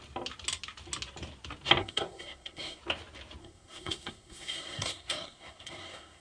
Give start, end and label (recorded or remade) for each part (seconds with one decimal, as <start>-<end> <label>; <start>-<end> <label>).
0.0-1.8 recorded; 1.8-2.8 remade; 2.8-3.4 recorded; 3.4-6.2 remade